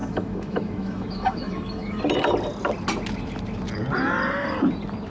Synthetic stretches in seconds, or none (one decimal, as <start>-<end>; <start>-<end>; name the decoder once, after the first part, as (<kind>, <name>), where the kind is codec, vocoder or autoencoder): 0.0-2.0 (autoencoder, DAC-VAE)